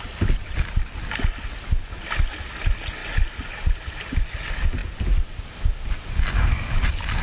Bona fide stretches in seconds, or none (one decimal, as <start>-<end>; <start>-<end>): 0.0-3.0; 4.3-4.8; 5.5-7.2